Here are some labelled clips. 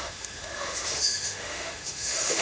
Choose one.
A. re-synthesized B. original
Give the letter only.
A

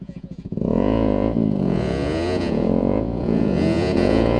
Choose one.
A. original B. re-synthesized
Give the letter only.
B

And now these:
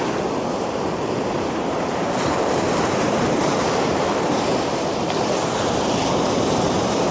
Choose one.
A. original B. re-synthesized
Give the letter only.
B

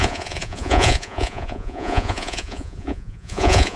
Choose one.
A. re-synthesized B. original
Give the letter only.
A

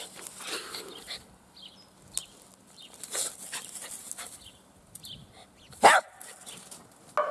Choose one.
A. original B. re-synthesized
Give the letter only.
A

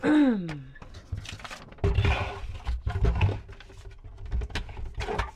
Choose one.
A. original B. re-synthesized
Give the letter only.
A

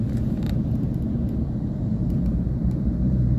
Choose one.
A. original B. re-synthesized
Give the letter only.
B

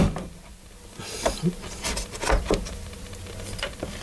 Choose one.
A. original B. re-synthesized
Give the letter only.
A